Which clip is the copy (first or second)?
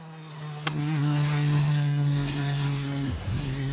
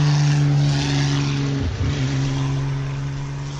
first